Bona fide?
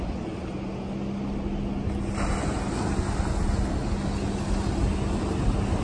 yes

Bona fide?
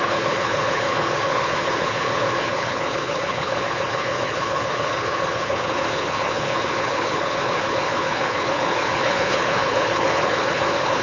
no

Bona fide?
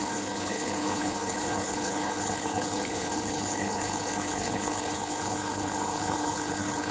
no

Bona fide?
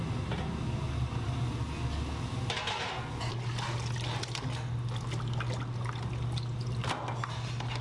yes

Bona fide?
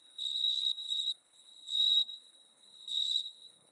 no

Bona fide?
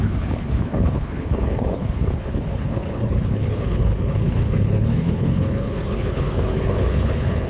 no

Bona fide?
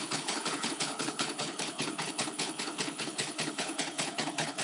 no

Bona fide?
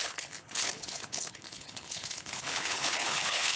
no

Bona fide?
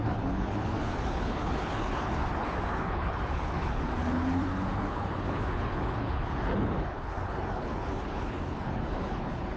no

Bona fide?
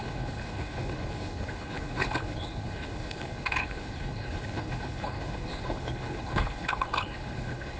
no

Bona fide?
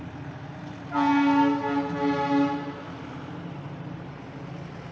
yes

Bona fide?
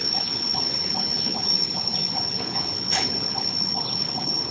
no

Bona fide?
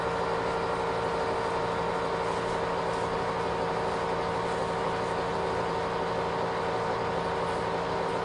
yes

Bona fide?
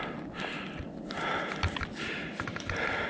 yes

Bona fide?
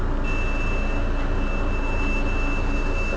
yes